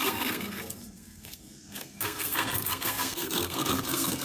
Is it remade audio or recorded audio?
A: remade